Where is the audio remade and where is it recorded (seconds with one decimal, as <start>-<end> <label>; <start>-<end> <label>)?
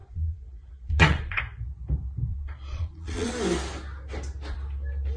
0.0-1.4 remade; 1.4-2.3 recorded; 2.3-3.3 remade; 3.3-5.2 recorded